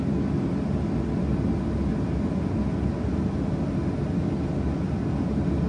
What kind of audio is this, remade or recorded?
recorded